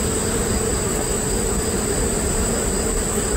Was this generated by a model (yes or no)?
no